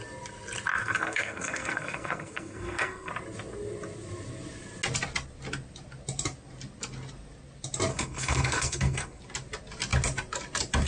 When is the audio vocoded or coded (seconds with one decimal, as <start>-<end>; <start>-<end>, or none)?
0.7-3.1; 7.9-9.2

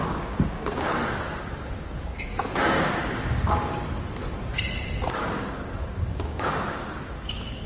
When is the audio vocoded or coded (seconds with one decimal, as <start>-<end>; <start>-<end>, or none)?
0.0-3.7; 5.1-7.7

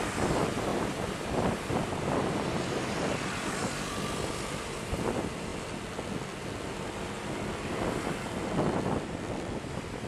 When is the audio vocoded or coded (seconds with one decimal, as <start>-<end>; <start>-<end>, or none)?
0.0-5.5; 9.7-10.1

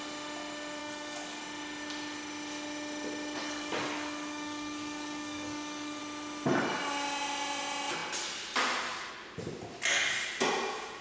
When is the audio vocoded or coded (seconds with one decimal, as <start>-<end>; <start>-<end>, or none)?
0.8-1.4; 3.4-6.0

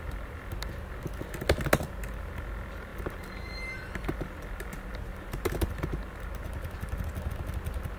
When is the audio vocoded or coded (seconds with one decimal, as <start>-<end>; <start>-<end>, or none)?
none

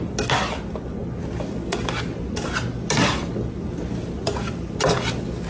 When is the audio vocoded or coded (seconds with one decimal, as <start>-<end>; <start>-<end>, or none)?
none

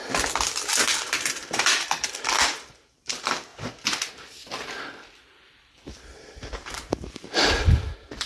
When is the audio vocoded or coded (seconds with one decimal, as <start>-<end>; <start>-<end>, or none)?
0.8-3.5; 5.6-8.3